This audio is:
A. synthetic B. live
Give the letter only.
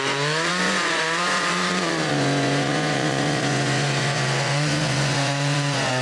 A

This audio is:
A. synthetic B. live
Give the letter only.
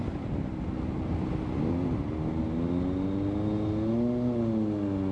B